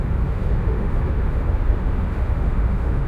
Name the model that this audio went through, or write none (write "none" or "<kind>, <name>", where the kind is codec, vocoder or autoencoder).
autoencoder, DAC-VAE